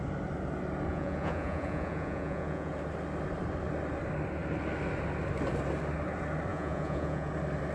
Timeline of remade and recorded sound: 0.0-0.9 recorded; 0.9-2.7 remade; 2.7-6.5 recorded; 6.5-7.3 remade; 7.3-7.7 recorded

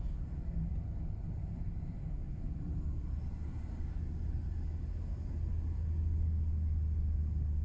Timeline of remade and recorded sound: 0.0-7.6 recorded

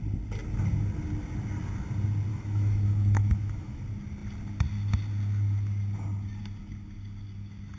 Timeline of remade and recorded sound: 0.0-2.3 recorded; 2.3-3.8 remade; 3.8-7.8 recorded